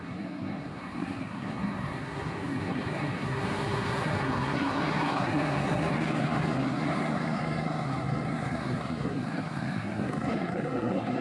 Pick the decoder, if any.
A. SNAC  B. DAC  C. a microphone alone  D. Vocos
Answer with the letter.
A